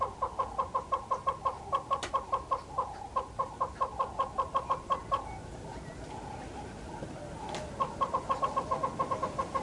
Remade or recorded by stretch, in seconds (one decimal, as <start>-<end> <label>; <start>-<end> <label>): 0.0-9.6 recorded